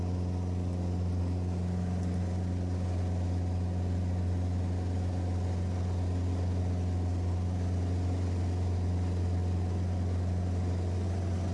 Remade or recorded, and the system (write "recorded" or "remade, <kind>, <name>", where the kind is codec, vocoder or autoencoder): recorded